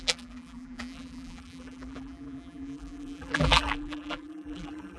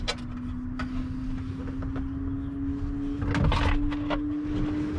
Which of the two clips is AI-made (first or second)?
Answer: first